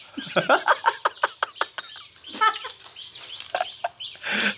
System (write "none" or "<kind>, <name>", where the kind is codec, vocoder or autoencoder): none